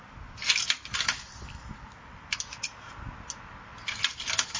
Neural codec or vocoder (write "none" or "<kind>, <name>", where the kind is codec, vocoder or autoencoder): none